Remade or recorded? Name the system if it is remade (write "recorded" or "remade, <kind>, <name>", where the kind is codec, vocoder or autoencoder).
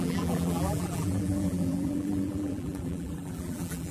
remade, vocoder, BigVGAN v2